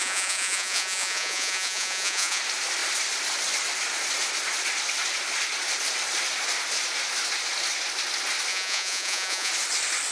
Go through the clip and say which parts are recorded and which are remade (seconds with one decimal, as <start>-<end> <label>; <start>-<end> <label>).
0.0-2.4 remade; 2.4-8.5 recorded; 8.5-9.5 remade; 9.5-10.1 recorded